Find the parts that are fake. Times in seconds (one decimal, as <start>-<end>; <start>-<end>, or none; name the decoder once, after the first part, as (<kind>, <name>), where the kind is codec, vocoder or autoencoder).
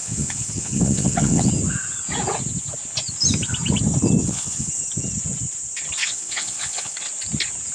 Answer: 0.0-1.5 (vocoder, WaveNeXt); 4.2-4.7; 6.0-7.0